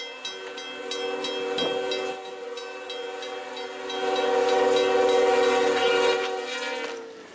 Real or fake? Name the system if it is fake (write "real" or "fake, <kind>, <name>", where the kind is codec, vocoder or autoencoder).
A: real